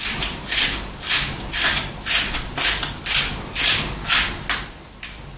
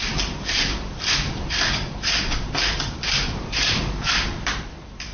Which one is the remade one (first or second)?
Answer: second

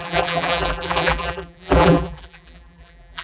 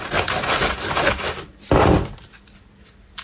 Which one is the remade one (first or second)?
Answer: first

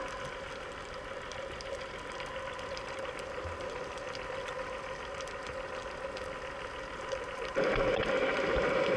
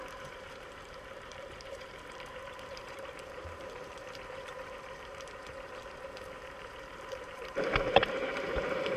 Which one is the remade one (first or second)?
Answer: second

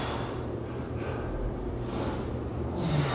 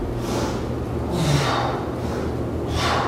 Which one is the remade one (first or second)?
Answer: first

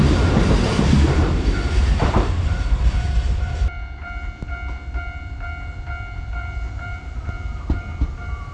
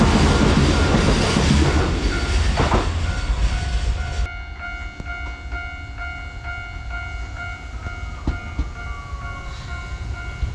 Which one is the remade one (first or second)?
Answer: first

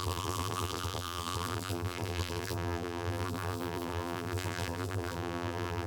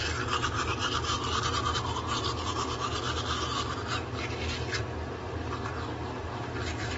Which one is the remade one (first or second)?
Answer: first